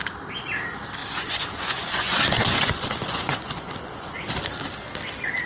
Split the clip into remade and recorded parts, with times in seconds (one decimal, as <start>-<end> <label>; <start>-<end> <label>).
0.0-1.0 recorded; 1.0-4.3 remade; 4.3-5.5 recorded